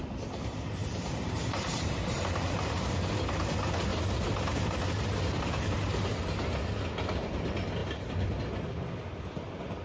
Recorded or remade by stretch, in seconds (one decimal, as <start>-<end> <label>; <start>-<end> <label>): 0.0-0.8 recorded; 0.8-3.1 remade; 3.1-9.8 recorded